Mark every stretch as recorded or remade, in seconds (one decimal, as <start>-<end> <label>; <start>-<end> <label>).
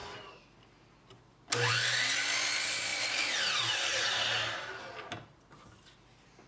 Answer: 0.0-6.5 recorded